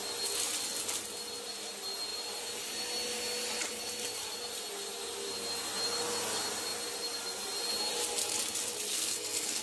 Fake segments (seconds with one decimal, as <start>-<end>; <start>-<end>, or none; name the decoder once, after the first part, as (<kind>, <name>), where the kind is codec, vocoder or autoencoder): 8.9-9.6 (codec, SNAC)